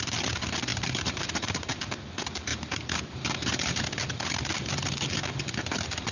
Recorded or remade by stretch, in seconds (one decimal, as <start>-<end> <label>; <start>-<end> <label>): 0.0-0.7 recorded; 0.7-1.8 remade; 1.8-2.5 recorded; 2.5-3.8 remade; 3.8-6.1 recorded